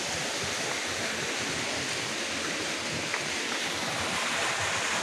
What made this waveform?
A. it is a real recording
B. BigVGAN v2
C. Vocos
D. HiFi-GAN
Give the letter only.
A